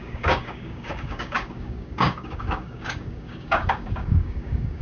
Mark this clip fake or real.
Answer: fake